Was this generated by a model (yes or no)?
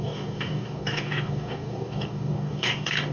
yes